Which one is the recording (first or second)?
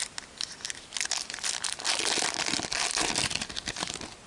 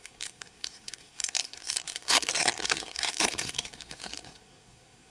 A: first